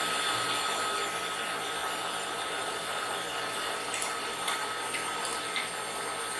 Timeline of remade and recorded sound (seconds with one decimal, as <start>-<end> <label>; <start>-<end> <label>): 0.0-1.8 recorded; 1.8-5.6 remade; 5.6-6.4 recorded